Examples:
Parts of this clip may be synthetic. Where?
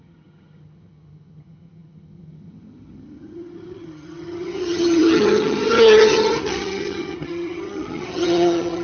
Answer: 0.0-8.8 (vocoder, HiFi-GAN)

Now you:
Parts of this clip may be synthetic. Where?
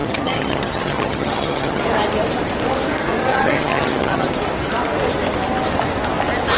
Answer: 0.0-1.8 (vocoder, HiFi-GAN); 3.3-4.3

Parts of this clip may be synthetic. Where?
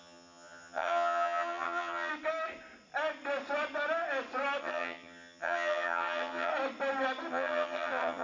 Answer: 0.0-2.1 (vocoder, HiFi-GAN); 4.6-6.5; 7.3-8.2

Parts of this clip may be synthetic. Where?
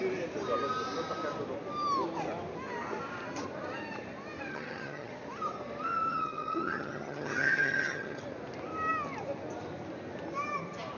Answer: 4.5-5.1 (vocoder, HiFi-GAN); 6.1-8.2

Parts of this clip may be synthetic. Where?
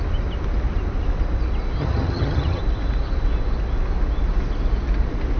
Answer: 1.8-2.6 (vocoder, HiFi-GAN)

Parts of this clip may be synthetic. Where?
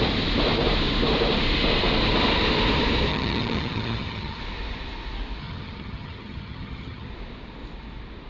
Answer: 3.1-4.4 (vocoder, HiFi-GAN); 5.4-7.1